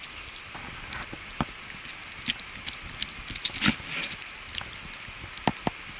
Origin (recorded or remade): recorded